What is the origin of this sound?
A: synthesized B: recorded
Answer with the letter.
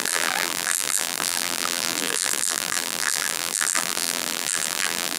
A